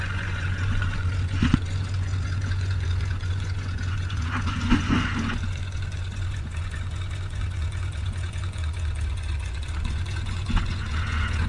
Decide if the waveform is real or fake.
fake